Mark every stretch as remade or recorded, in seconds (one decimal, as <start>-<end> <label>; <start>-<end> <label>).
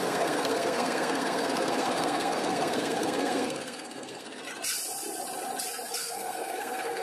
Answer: 0.0-4.4 remade; 4.4-6.0 recorded; 6.0-7.0 remade